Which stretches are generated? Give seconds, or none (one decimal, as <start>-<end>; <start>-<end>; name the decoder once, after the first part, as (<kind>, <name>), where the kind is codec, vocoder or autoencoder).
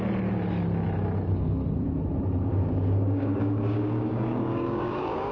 2.5-5.3 (codec, DAC)